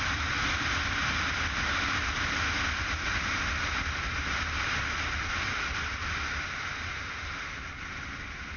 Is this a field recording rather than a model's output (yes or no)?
yes